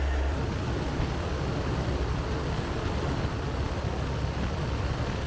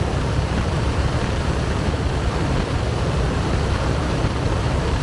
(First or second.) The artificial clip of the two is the second